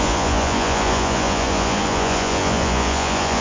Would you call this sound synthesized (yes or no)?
yes